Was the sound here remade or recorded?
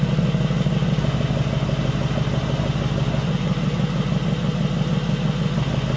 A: recorded